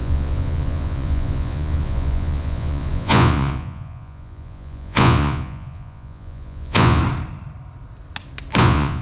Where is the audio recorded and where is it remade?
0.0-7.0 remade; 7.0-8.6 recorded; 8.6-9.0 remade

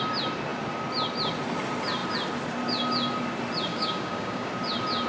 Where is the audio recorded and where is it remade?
0.0-3.7 recorded; 3.7-4.5 remade; 4.5-5.1 recorded

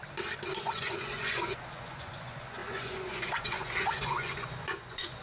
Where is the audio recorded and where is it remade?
0.0-0.6 recorded; 0.6-5.2 remade

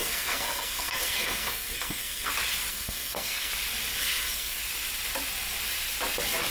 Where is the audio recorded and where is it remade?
0.0-2.3 remade; 2.3-2.7 recorded; 2.7-3.5 remade; 3.5-4.0 recorded; 4.0-4.6 remade; 4.6-6.5 recorded

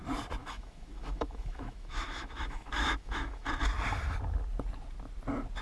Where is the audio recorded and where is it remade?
0.0-0.4 recorded; 0.4-3.5 remade; 3.5-5.6 recorded

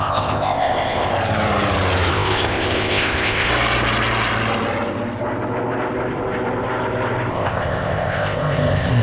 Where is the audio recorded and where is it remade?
0.0-1.1 remade; 1.1-2.1 recorded; 2.1-3.5 remade; 3.5-7.3 recorded; 7.3-9.0 remade

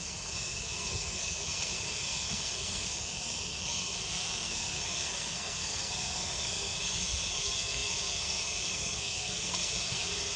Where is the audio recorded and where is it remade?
0.0-10.4 remade

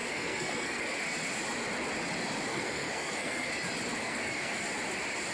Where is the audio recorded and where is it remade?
0.0-0.8 remade; 0.8-2.5 recorded; 2.5-3.5 remade; 3.5-4.0 recorded; 4.0-4.6 remade; 4.6-5.3 recorded